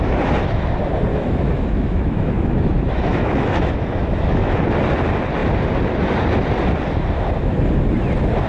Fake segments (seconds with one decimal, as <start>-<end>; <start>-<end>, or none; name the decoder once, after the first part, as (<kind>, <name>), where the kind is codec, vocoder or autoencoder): 1.1-4.6 (autoencoder, DAC-VAE)